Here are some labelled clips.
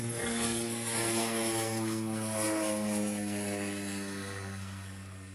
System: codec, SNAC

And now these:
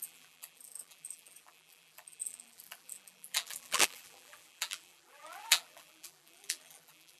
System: vocoder, BigVGAN v2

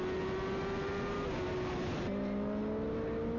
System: none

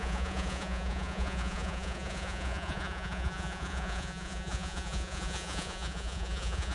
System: vocoder, Vocos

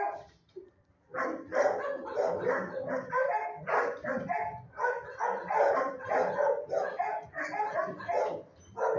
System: none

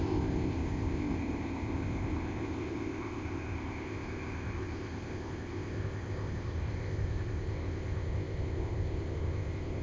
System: codec, ZipCodec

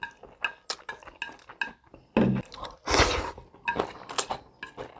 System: none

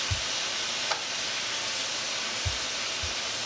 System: none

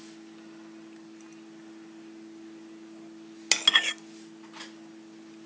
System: none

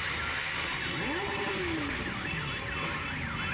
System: none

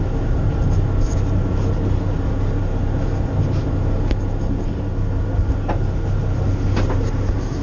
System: none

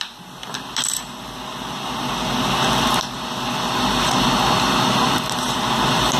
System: vocoder, BigVGAN v2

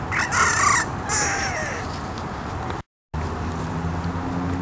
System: none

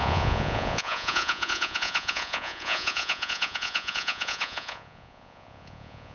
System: vocoder, Vocos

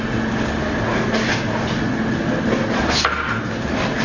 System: none